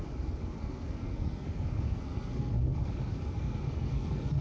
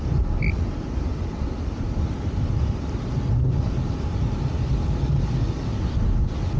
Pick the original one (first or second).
second